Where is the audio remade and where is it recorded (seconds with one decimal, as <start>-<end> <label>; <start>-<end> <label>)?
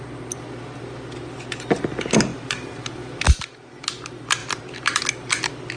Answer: 0.0-2.3 recorded; 2.3-3.2 remade; 3.2-4.4 recorded; 4.4-5.0 remade; 5.0-5.8 recorded